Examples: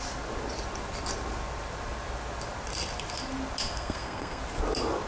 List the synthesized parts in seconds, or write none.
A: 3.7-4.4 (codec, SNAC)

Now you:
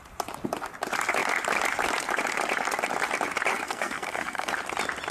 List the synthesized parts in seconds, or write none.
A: 3.5-4.5 (codec, SNAC)

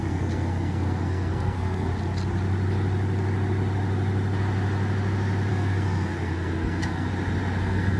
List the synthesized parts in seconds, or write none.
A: 0.0-1.9 (codec, SNAC); 5.5-7.1; 7.6-8.0

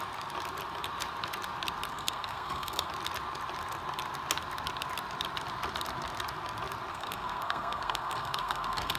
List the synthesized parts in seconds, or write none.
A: 1.9-2.9 (codec, SNAC); 6.9-9.0

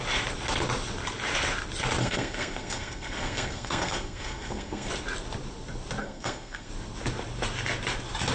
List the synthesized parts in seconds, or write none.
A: 2.0-4.9 (codec, SNAC); 6.0-6.7

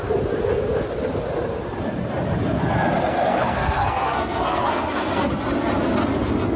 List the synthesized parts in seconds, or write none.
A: 3.1-5.3 (codec, SNAC)

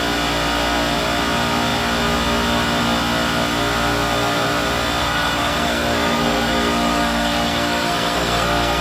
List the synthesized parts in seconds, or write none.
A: 5.0-8.8 (codec, SNAC)

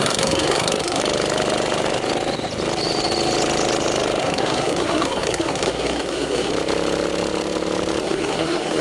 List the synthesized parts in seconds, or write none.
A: 0.0-1.0 (codec, SNAC); 4.2-6.5; 8.0-8.8